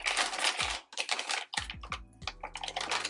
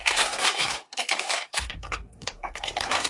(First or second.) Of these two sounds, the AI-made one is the second